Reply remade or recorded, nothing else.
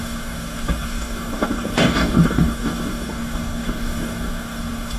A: remade